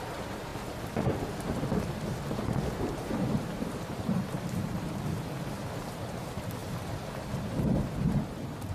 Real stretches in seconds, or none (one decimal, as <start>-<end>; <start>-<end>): 0.5-2.3

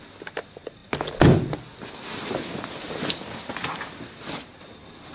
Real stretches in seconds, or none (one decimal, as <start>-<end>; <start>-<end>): 0.0-5.1